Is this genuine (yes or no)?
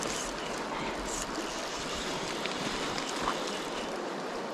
no